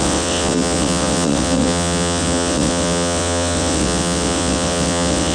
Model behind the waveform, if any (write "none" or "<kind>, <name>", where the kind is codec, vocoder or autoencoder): vocoder, WaveNeXt